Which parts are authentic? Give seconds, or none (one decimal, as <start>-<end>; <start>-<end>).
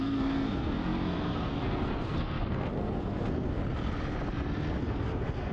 3.6-4.8